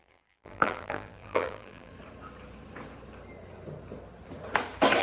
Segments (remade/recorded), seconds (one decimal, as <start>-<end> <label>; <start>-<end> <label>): 0.0-1.9 remade; 1.9-5.0 recorded